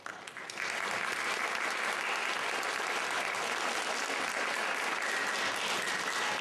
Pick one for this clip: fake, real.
real